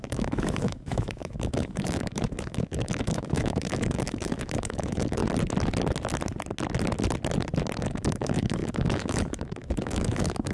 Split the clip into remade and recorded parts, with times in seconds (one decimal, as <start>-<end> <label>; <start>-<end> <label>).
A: 0.0-5.2 remade; 5.2-7.8 recorded; 7.8-10.5 remade